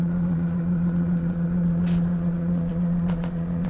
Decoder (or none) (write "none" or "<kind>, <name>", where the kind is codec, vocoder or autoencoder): vocoder, Vocos